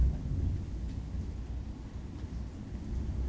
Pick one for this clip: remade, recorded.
recorded